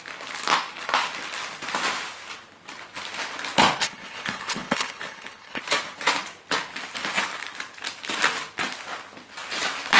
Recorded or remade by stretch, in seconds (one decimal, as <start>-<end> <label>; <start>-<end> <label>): 0.0-3.8 recorded; 3.8-5.6 remade; 5.6-10.0 recorded